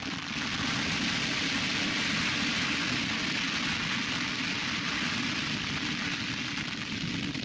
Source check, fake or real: real